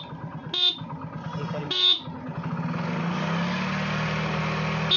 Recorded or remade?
recorded